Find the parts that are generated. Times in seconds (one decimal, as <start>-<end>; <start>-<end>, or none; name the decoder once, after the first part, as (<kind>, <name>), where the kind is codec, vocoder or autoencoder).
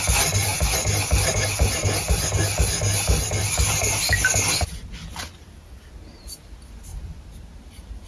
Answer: none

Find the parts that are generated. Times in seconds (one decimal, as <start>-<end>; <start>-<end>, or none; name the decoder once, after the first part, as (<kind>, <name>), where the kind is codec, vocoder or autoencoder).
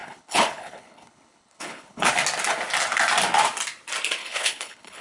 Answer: 0.0-2.1 (codec, HILCodec); 4.2-5.0